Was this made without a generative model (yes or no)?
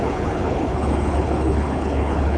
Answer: no